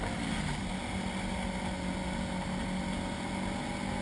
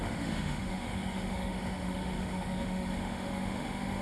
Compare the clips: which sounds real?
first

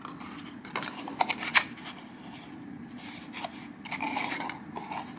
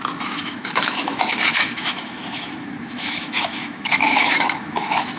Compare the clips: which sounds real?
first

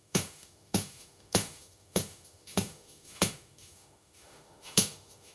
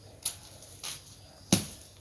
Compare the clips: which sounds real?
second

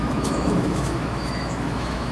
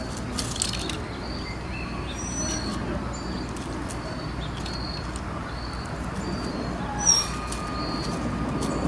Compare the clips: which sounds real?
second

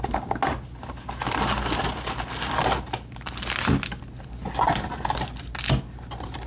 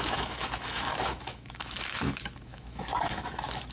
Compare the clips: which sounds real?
first